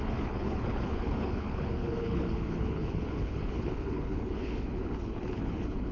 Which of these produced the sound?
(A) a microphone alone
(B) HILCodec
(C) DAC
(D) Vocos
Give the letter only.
B